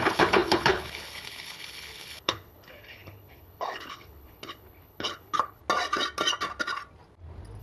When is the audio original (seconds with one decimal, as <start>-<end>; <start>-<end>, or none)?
5.6-7.6